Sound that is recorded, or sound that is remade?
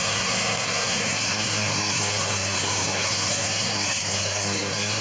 remade